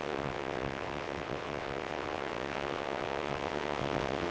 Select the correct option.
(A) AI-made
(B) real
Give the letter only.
A